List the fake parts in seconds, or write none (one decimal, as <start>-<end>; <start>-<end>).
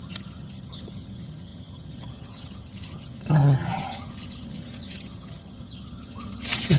0.0-6.8